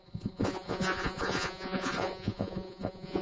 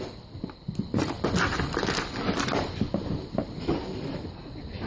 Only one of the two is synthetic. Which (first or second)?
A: first